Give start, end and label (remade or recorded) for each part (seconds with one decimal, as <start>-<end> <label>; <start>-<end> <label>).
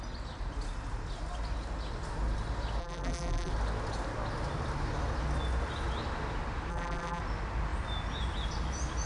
0.0-2.8 recorded; 2.8-3.5 remade; 3.5-6.7 recorded; 6.7-7.2 remade; 7.2-9.1 recorded